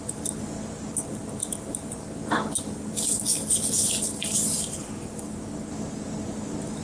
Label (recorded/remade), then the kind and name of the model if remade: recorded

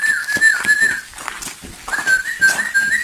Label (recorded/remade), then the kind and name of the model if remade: recorded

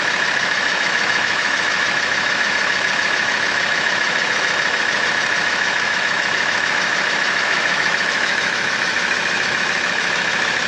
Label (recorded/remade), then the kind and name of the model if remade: remade, autoencoder, DAC-VAE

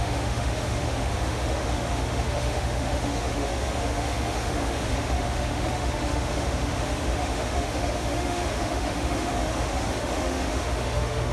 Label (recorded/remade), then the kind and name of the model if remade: remade, autoencoder, DAC-VAE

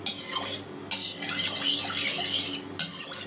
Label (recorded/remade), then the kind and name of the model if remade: recorded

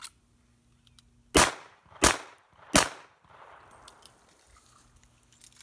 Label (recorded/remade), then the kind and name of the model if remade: recorded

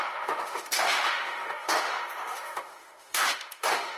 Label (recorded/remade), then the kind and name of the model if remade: remade, autoencoder, DAC-VAE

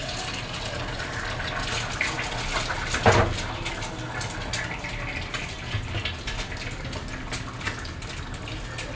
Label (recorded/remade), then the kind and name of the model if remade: recorded